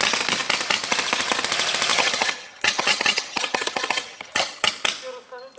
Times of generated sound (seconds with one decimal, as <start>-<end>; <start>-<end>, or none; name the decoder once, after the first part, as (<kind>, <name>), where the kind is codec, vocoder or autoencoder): 1.9-4.7 (vocoder, HiFi-GAN)